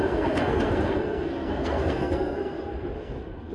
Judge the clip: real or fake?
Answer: fake